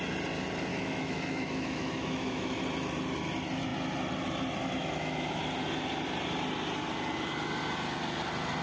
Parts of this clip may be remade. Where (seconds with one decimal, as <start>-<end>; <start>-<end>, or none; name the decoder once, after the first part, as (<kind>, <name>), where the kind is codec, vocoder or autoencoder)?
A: 0.7-2.6 (autoencoder, DAC-VAE); 4.8-5.4